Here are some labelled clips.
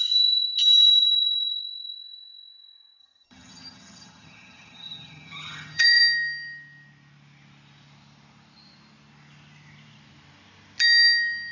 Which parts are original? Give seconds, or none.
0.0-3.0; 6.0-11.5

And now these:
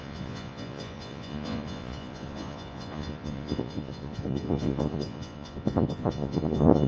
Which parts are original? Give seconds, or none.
none